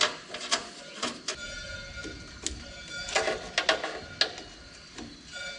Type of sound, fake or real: real